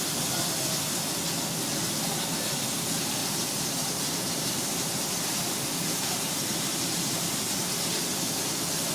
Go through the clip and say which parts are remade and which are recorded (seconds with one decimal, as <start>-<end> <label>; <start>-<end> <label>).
0.0-3.2 recorded; 3.2-7.3 remade; 7.3-8.9 recorded